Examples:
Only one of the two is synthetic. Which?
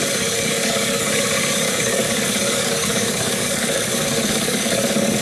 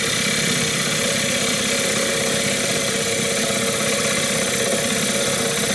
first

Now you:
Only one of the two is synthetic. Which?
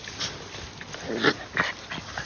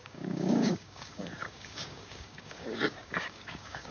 second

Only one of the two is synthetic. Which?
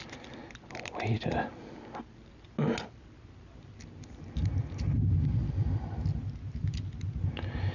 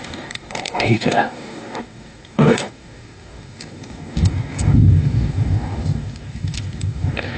second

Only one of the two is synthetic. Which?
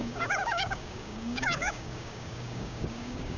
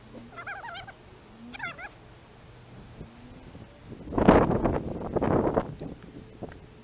first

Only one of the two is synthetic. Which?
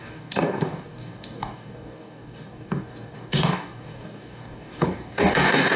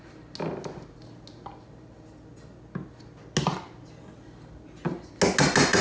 first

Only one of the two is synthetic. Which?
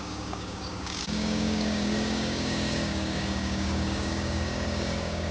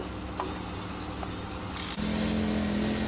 first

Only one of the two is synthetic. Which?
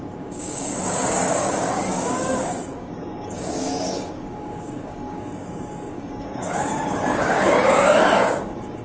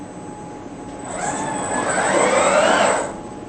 first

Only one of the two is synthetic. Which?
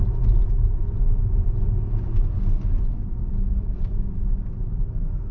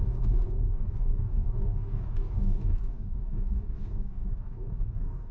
second